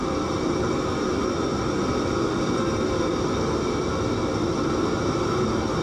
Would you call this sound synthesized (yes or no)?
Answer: no